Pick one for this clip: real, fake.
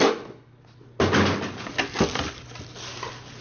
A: real